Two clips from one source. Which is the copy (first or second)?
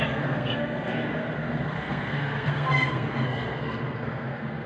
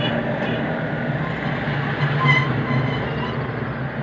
first